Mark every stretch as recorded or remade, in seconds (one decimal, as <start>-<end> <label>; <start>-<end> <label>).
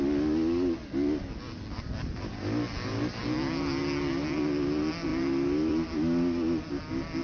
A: 0.0-7.2 recorded